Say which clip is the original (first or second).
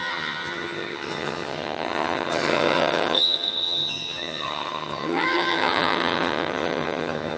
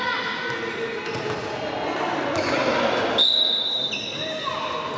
second